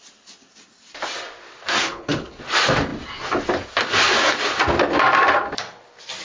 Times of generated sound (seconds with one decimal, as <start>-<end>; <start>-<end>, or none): 1.8-2.4